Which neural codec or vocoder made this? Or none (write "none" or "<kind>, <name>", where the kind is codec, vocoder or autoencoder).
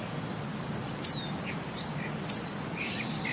none